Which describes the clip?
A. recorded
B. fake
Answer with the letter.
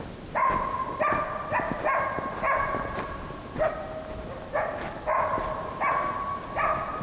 A